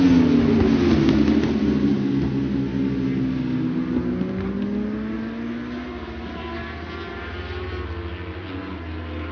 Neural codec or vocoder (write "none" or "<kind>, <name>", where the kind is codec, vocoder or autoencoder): none